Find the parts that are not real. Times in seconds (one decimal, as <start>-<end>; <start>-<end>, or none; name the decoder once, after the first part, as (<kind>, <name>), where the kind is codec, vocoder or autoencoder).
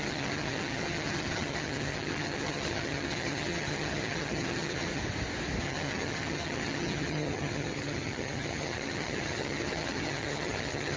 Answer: 0.0-5.0 (vocoder, HiFi-GAN); 5.6-11.0